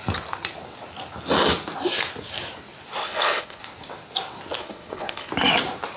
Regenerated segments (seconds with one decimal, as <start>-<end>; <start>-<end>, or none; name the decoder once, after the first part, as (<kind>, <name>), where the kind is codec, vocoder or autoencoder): 3.0-3.6 (codec, HILCodec); 4.6-5.3